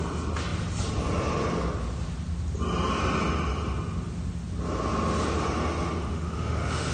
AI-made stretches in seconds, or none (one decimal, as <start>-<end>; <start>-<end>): 6.0-6.9